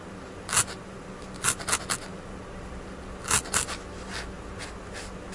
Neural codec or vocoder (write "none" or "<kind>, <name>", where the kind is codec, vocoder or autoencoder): none